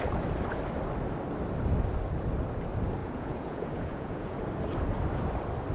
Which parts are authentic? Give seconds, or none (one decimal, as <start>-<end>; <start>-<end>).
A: 0.0-3.0; 4.4-5.7